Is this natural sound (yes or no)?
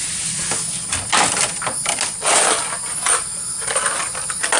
yes